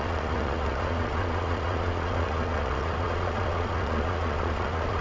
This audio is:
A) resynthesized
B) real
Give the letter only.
A